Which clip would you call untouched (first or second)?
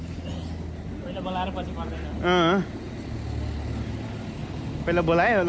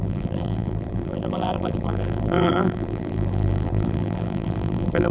first